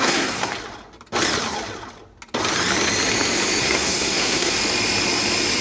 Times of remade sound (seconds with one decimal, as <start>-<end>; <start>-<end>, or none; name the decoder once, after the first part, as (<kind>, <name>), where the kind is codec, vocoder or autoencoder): 0.0-0.5 (codec, SNAC); 3.6-4.6